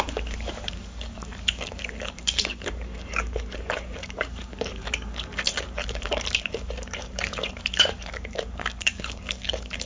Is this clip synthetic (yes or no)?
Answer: yes